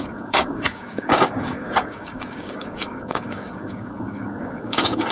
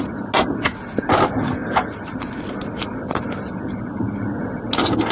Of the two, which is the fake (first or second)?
first